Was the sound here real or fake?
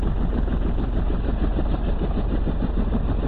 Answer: real